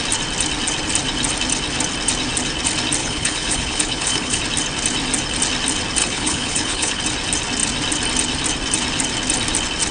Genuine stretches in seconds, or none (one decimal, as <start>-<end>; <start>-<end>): 0.0-3.0; 4.4-6.0; 7.0-9.9

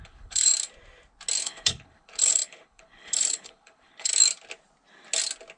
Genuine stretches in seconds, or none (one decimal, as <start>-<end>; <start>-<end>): 0.5-1.4; 4.1-5.6